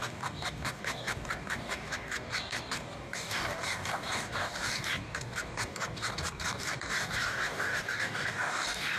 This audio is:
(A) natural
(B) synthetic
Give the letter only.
B